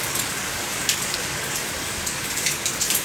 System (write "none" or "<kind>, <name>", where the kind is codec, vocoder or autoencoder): codec, DAC